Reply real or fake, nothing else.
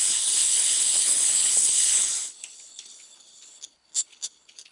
fake